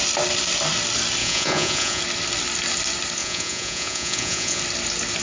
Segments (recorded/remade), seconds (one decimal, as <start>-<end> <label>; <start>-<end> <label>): 0.0-1.2 recorded; 1.2-2.0 remade; 2.0-3.2 recorded; 3.2-4.6 remade; 4.6-5.2 recorded